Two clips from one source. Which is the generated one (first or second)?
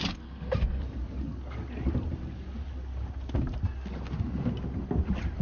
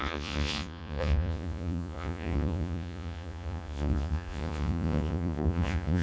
second